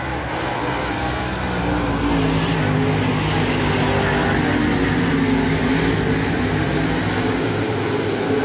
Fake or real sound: real